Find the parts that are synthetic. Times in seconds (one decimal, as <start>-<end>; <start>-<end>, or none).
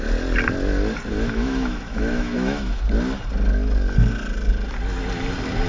1.1-2.8